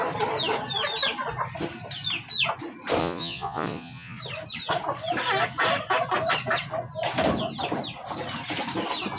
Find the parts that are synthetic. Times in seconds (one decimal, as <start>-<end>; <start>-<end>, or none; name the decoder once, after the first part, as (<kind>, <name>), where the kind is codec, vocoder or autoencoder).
3.0-4.2 (vocoder, Vocos)